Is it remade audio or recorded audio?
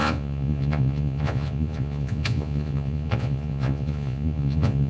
remade